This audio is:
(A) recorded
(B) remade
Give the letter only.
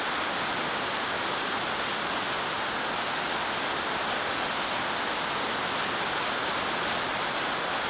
A